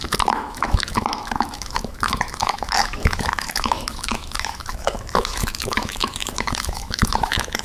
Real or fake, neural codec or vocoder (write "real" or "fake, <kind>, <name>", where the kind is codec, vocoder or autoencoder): fake, autoencoder, DAC-VAE